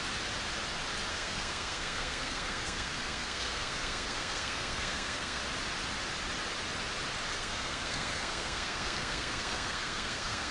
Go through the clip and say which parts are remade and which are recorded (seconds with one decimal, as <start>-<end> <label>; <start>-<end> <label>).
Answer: 0.0-1.1 recorded; 1.1-5.4 remade; 5.4-7.3 recorded; 7.3-10.5 remade